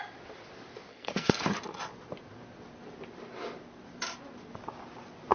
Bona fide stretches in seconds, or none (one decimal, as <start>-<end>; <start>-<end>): 0.0-0.9; 1.4-5.3